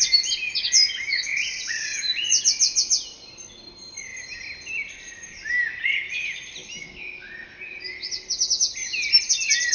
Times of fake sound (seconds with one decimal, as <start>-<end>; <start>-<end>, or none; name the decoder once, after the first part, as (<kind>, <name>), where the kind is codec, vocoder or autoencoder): none